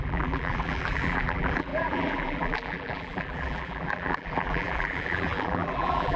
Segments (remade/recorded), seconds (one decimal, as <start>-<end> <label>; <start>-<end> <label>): 0.0-6.2 remade